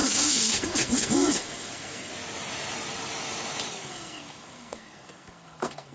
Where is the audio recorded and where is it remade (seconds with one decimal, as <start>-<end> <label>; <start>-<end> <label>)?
0.0-2.1 remade; 2.1-3.7 recorded; 3.7-5.9 remade